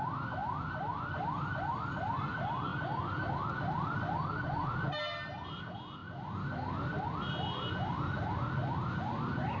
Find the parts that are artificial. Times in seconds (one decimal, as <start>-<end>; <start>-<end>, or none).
none